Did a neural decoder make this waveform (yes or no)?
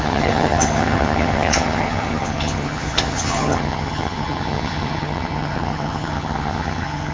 yes